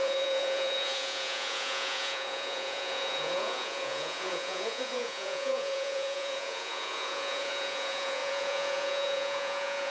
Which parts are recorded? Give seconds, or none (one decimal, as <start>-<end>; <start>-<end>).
none